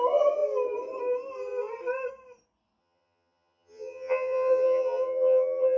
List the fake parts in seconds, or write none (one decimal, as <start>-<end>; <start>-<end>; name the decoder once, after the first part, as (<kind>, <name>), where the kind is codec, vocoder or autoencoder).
2.8-5.8 (vocoder, HiFi-GAN)